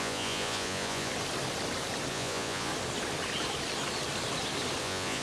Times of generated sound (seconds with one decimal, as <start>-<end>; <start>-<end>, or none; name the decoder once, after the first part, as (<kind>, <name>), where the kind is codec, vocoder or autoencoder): 0.0-1.1 (vocoder, Vocos); 2.1-2.7; 4.8-5.2